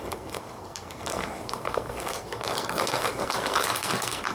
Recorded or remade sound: remade